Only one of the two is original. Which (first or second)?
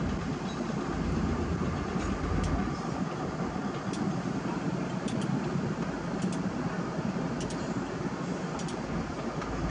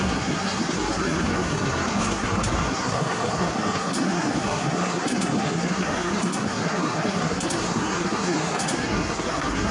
first